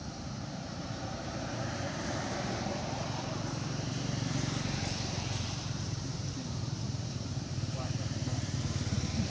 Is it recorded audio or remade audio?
remade